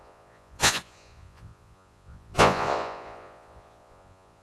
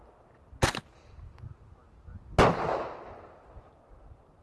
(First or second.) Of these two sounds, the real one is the second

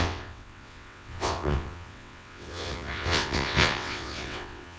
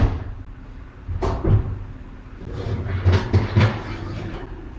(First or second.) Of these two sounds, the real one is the second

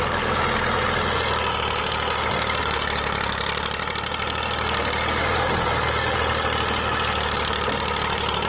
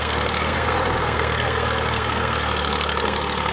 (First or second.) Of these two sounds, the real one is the first